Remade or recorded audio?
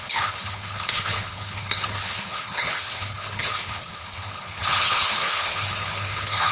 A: remade